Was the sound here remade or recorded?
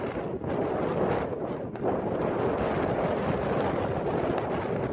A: recorded